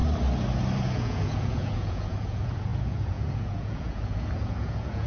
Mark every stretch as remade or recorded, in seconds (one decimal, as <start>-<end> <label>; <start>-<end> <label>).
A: 0.0-0.8 recorded; 0.8-5.1 remade